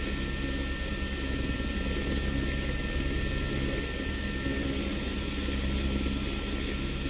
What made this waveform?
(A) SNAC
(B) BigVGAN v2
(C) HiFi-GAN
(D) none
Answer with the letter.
D